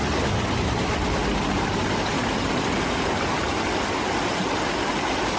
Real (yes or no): yes